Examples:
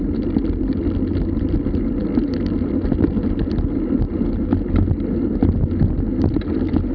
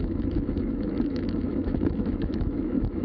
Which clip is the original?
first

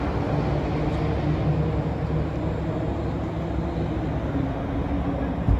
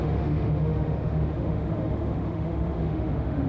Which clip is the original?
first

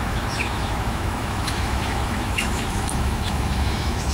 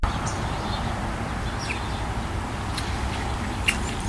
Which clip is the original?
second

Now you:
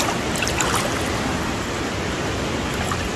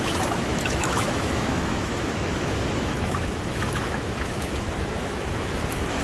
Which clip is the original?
first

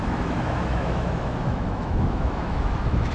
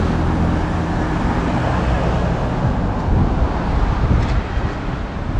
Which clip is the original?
second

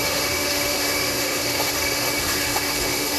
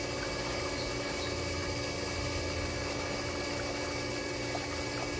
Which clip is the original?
second